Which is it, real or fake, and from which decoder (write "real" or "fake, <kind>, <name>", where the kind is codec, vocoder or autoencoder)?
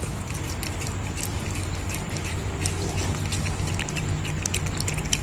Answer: real